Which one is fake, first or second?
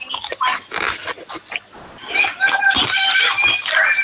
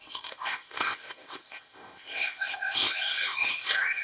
second